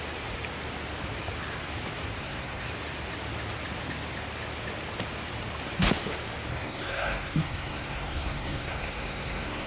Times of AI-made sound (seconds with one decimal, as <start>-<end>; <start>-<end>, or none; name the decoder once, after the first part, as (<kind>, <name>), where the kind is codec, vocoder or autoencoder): 2.2-2.7 (codec, SNAC); 6.5-9.7